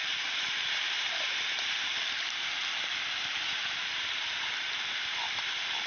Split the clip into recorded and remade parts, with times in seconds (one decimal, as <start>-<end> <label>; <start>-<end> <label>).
0.0-5.9 remade